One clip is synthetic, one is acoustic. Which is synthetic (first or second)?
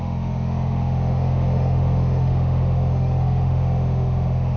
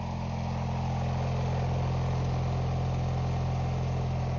first